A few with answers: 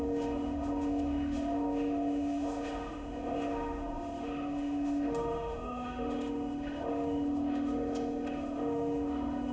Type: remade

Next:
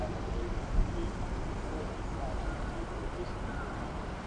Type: recorded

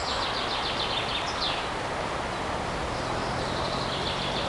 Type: recorded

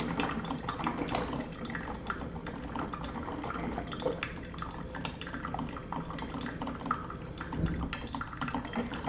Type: recorded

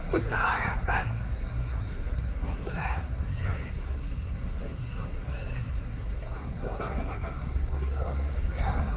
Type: remade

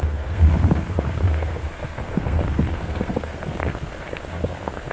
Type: remade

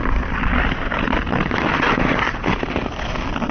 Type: recorded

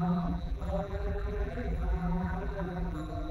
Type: remade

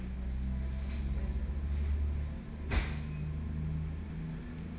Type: recorded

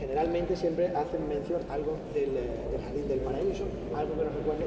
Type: recorded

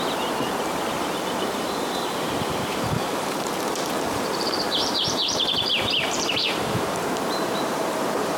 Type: remade